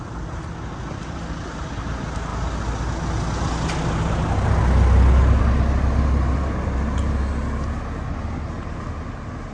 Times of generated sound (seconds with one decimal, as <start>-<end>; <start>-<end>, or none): none

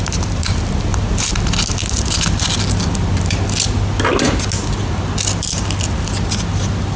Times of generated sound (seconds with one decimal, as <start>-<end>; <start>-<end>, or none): none

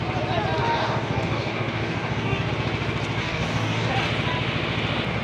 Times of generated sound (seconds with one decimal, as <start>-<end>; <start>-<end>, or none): 0.6-2.5; 3.2-3.9

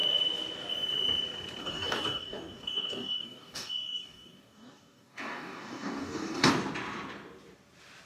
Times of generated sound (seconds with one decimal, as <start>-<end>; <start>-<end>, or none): 1.6-6.5

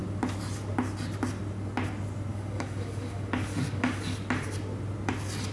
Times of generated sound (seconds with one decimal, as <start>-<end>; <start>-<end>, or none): 2.3-4.0

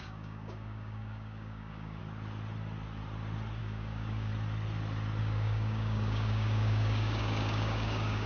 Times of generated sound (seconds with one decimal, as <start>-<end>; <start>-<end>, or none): 0.0-2.0; 3.6-4.3; 5.2-8.3

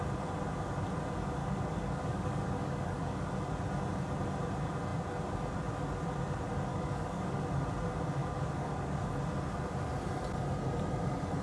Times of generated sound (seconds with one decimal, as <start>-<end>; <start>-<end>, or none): 1.4-3.3; 6.7-7.4; 8.2-9.1

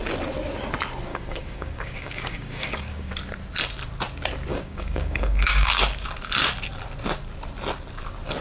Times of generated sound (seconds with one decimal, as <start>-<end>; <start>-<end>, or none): 1.1-3.1; 4.5-5.8